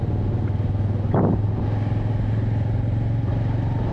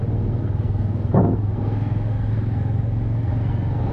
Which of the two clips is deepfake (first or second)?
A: second